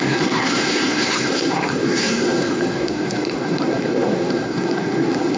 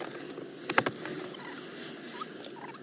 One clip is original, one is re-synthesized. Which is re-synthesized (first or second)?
first